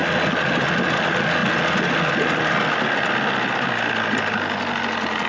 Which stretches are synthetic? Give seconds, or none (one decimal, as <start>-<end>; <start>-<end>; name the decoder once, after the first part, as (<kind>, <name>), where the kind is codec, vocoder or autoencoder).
none